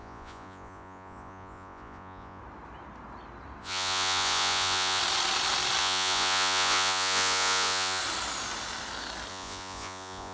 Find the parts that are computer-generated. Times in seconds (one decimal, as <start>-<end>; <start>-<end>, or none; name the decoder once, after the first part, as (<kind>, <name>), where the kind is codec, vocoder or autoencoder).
0.0-2.4 (vocoder, Vocos); 3.6-5.0; 5.8-8.0; 9.3-10.3